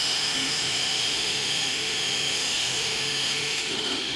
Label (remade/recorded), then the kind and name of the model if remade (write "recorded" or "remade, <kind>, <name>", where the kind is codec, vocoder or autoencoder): remade, autoencoder, DAC-VAE